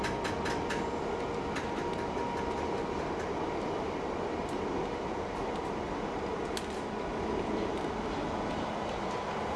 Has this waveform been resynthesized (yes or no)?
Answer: no